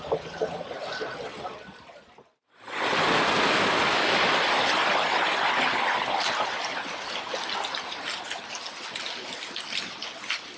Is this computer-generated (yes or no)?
no